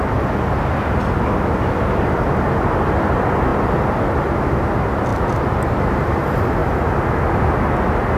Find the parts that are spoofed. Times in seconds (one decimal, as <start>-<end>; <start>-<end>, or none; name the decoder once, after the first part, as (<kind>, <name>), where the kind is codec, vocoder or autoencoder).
5.1-5.8 (vocoder, BigVGAN v2)